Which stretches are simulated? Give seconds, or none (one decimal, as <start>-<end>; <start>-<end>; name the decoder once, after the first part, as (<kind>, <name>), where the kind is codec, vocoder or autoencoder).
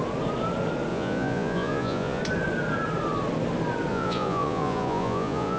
0.9-2.2 (vocoder, Vocos); 3.9-5.6